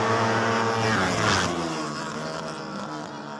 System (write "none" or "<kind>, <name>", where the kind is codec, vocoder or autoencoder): none